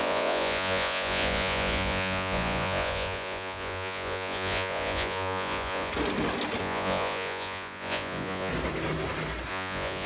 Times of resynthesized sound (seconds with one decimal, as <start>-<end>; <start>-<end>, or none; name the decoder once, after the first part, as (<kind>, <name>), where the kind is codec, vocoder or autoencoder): 0.0-5.9 (vocoder, Vocos); 6.6-8.5; 9.5-10.1